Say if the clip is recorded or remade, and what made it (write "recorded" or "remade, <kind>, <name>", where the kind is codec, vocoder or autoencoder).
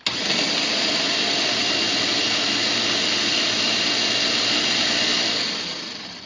recorded